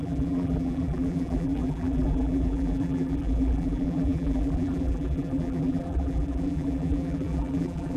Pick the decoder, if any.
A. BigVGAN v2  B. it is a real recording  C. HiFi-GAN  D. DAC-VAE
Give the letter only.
A